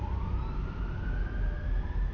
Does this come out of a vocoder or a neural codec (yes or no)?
no